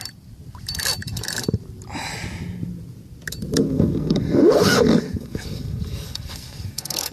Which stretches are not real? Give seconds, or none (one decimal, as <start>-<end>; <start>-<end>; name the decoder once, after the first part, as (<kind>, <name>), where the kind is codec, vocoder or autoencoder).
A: 3.6-7.1 (codec, SNAC)